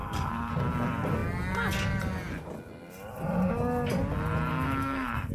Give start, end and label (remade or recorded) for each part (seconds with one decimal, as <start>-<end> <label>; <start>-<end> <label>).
0.0-0.5 remade; 0.5-4.5 recorded; 4.5-5.3 remade